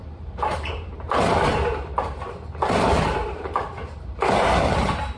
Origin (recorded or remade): remade